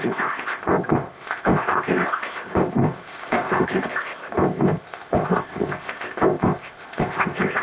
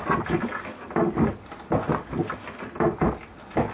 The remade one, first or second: first